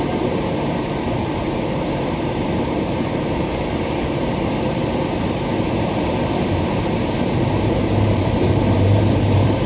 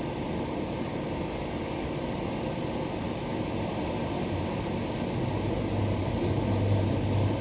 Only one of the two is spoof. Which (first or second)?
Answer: first